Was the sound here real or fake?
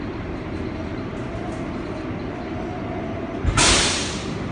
real